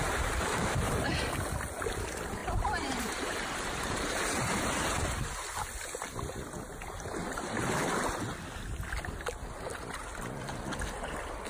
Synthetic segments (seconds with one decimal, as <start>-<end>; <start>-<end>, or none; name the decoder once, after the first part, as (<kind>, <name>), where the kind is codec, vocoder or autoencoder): 0.0-0.9 (vocoder, BigVGAN v2); 2.4-5.3